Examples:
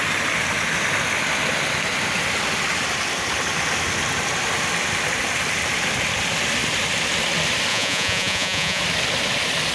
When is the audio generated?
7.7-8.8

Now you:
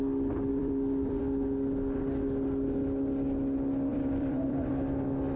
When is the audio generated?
0.5-1.2; 3.9-4.7

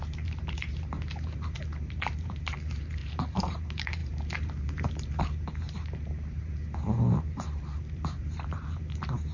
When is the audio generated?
0.0-9.3